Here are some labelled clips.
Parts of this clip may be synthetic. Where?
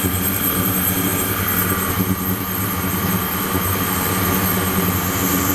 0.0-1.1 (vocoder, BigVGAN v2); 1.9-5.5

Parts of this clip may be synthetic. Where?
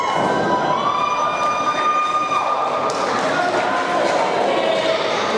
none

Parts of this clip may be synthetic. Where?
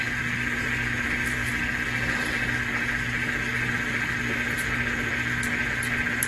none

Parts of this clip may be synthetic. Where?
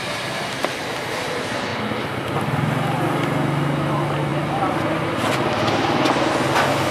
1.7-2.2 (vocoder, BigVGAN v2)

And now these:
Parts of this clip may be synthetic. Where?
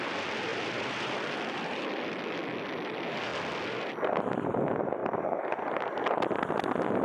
0.5-2.2 (vocoder, BigVGAN v2)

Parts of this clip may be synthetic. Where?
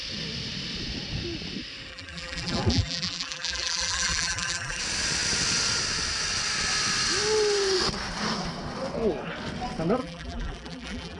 1.9-4.8 (vocoder, BigVGAN v2); 10.0-11.2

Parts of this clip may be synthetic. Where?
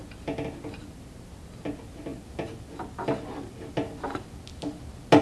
none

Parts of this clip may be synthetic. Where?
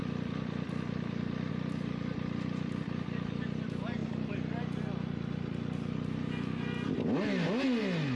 0.0-4.0 (vocoder, BigVGAN v2)